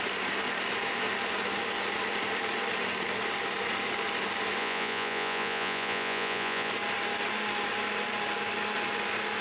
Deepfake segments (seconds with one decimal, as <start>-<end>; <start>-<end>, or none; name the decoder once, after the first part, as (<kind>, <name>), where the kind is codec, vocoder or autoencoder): 4.6-6.7 (vocoder, Vocos)